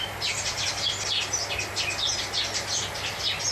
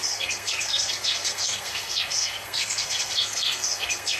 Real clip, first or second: first